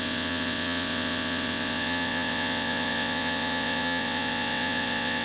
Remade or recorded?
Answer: remade